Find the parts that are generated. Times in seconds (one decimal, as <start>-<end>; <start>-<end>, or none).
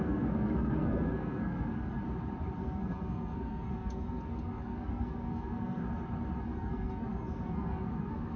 0.0-2.0; 2.6-5.8; 6.4-8.4